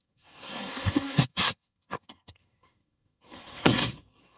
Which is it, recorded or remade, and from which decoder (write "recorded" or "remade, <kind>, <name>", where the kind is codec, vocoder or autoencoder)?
remade, codec, SNAC